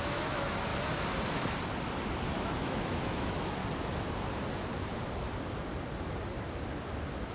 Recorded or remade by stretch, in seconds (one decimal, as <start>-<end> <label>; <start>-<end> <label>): 0.0-0.7 remade; 0.7-2.3 recorded; 2.3-3.6 remade; 3.6-7.3 recorded